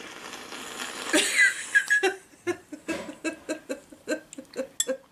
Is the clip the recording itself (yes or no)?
yes